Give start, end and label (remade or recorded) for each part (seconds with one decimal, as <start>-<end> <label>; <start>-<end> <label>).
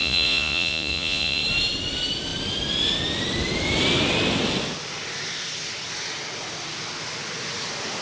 0.0-1.4 remade; 1.4-8.0 recorded